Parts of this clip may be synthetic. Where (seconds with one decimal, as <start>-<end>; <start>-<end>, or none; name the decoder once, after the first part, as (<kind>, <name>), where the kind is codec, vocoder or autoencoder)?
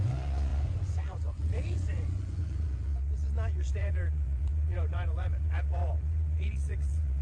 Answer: 0.0-7.2 (vocoder, Vocos)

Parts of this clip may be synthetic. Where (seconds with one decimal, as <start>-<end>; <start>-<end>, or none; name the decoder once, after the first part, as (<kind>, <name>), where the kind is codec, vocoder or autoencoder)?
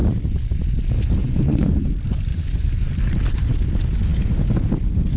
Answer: 1.2-1.9 (vocoder, Vocos); 2.3-2.9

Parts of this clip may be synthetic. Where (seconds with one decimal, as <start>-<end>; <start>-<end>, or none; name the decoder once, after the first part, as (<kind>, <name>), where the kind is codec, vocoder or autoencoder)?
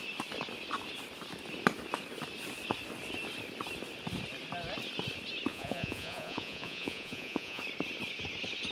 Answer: 5.5-7.6 (vocoder, Vocos)